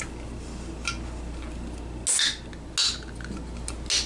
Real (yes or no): yes